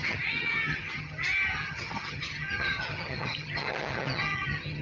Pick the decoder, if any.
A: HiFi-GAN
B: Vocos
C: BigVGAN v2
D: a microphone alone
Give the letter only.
A